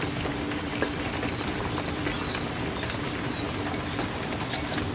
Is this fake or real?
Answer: real